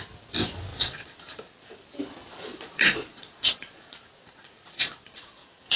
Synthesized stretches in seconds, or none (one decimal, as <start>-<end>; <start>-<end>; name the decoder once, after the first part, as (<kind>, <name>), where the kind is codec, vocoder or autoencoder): 0.7-1.2 (vocoder, Vocos); 2.5-5.8